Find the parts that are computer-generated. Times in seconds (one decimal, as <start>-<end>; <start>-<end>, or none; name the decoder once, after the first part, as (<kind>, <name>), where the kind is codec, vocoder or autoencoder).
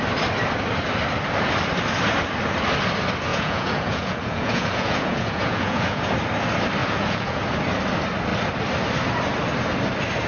3.3-6.1 (vocoder, Vocos); 6.8-7.4